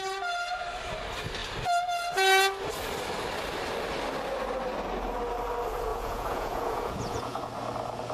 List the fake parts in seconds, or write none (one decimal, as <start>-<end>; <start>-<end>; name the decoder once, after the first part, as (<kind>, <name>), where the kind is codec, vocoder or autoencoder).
5.9-7.4 (vocoder, Vocos)

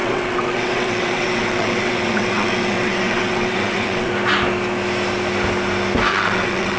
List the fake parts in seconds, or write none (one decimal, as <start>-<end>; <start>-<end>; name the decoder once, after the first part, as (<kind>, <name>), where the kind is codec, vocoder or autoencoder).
0.0-4.1 (vocoder, WaveNeXt); 6.1-6.8